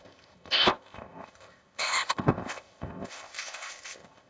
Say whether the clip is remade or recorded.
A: remade